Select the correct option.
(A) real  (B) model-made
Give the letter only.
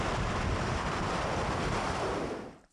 A